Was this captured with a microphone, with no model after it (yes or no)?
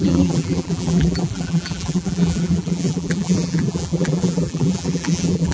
no